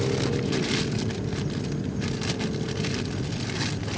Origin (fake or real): real